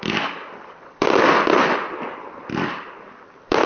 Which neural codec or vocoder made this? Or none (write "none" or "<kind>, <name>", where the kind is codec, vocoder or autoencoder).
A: vocoder, BigVGAN v2